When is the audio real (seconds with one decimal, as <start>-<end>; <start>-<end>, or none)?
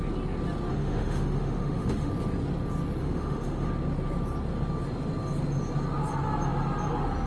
0.0-0.7; 2.1-3.0; 3.7-7.3